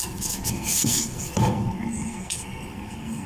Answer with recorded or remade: remade